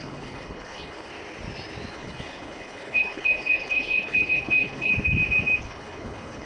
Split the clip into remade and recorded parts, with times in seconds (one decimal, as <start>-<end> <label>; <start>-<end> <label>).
0.0-1.1 remade; 1.1-1.9 recorded; 1.9-4.9 remade; 4.9-5.6 recorded; 5.6-6.5 remade